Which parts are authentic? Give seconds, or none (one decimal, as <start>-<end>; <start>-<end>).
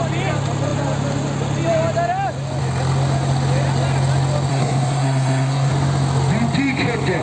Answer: 0.0-4.5; 5.7-7.2